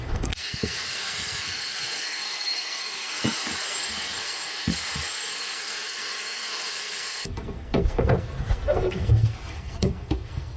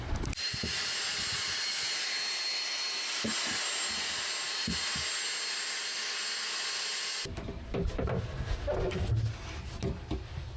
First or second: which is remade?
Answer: first